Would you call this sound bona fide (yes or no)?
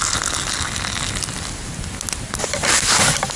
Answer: yes